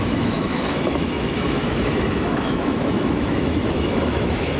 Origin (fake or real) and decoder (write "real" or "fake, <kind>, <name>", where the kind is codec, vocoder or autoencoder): fake, autoencoder, DAC-VAE